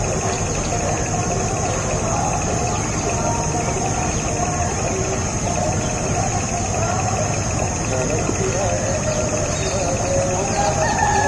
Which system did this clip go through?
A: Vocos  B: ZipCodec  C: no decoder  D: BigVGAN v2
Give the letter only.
C